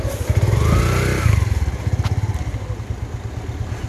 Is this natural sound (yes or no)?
yes